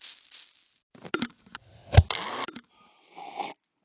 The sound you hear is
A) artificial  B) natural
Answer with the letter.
B